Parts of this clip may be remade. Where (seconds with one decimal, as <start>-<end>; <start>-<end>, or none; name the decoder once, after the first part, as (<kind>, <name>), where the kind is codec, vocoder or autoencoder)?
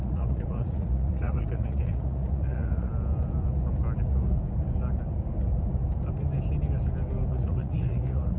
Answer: 0.0-2.9 (vocoder, Vocos); 7.3-8.4